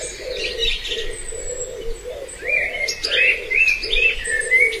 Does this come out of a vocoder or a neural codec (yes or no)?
no